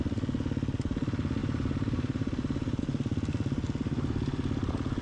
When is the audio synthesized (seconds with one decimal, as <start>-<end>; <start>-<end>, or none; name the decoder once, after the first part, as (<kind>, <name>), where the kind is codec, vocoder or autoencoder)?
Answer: 1.4-2.8 (vocoder, BigVGAN v2)